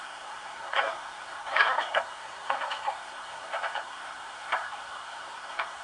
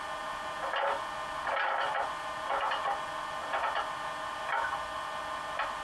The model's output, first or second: first